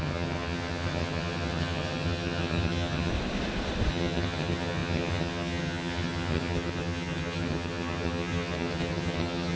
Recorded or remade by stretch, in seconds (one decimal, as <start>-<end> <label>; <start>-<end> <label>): 0.0-3.1 remade; 3.1-3.9 recorded; 3.9-9.6 remade